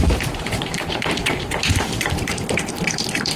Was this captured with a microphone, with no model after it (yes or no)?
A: no